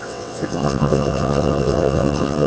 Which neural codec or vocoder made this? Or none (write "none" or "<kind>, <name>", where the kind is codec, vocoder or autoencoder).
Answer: vocoder, WaveNeXt